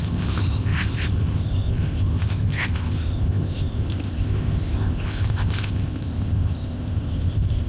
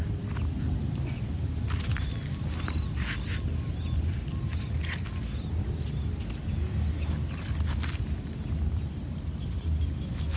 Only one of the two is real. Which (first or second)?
second